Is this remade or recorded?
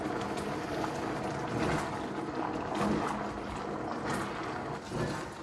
recorded